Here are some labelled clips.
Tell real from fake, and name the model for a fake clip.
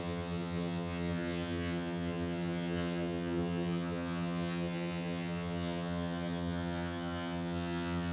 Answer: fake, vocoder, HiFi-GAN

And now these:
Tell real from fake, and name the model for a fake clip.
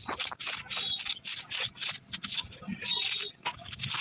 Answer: real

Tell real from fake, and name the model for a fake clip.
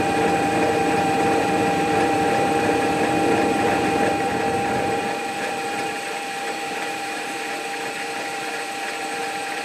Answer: fake, vocoder, BigVGAN v2